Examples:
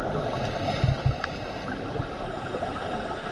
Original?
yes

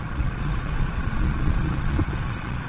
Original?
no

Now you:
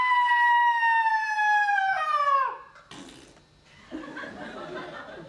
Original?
yes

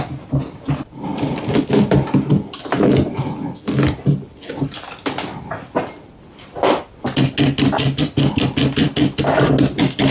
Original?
yes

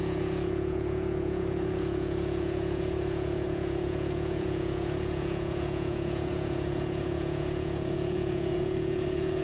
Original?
no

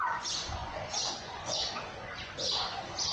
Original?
no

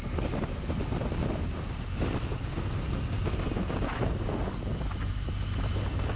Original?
yes